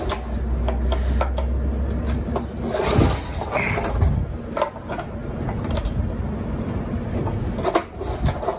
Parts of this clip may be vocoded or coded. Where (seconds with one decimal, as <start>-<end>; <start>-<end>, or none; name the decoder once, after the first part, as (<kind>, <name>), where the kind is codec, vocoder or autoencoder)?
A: 5.2-7.2 (vocoder, BigVGAN v2)